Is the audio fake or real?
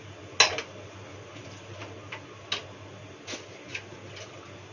real